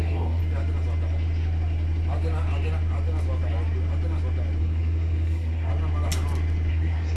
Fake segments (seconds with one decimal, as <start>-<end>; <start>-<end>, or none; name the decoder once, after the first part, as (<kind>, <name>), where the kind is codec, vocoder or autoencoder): 0.0-0.4 (codec, SNAC); 4.6-5.7; 6.7-7.2